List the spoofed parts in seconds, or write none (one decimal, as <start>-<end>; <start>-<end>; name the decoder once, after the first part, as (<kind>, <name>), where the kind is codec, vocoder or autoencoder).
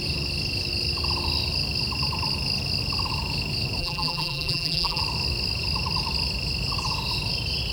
3.8-5.0 (vocoder, BigVGAN v2)